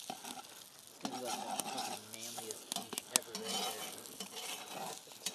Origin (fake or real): real